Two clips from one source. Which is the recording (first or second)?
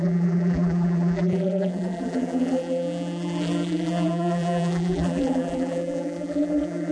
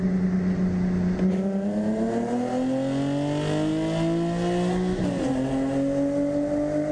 second